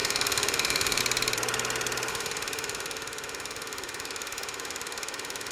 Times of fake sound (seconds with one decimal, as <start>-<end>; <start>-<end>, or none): 0.0-1.0; 2.1-5.5